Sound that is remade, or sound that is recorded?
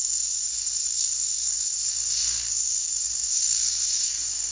remade